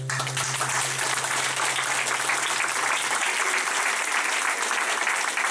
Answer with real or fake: real